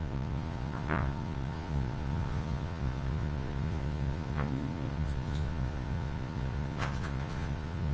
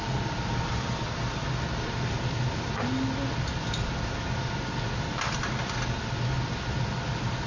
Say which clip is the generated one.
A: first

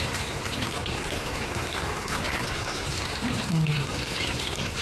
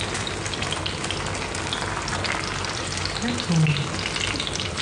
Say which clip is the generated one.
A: first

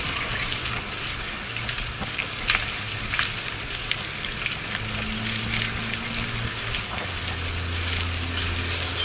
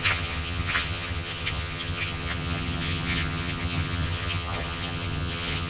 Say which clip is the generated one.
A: second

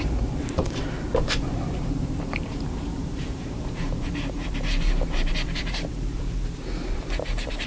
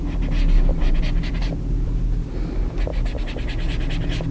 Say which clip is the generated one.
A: first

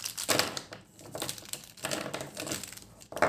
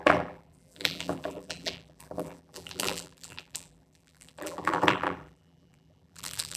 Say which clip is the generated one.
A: second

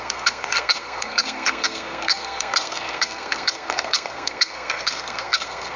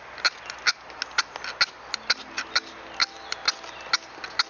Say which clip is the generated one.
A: first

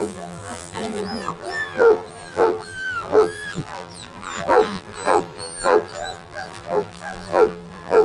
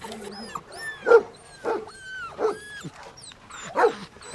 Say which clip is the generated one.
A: first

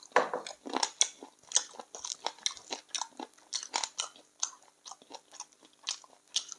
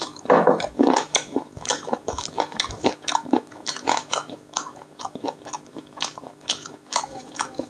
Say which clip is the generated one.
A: second